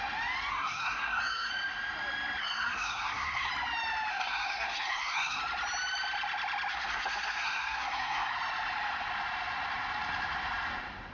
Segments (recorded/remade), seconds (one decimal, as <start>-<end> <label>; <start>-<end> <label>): 0.0-0.5 recorded; 0.5-1.5 remade; 1.5-2.4 recorded; 2.4-3.5 remade; 3.5-4.1 recorded; 4.1-5.4 remade; 5.4-6.7 recorded; 6.7-8.3 remade; 8.3-11.1 recorded

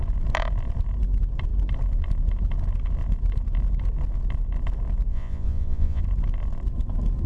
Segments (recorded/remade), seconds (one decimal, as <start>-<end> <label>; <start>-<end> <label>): 0.0-5.1 recorded; 5.1-6.0 remade; 6.0-7.3 recorded

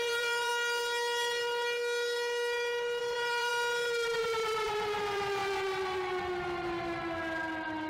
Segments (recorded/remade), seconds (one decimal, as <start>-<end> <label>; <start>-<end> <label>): 0.0-0.5 remade; 0.5-3.0 recorded; 3.0-3.5 remade; 3.5-4.2 recorded; 4.2-5.4 remade; 5.4-7.9 recorded